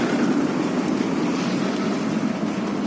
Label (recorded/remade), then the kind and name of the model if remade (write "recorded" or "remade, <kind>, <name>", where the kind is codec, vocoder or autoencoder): recorded